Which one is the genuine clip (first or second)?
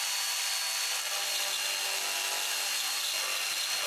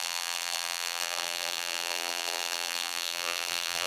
first